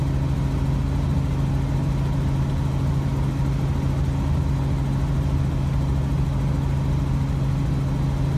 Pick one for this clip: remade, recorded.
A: recorded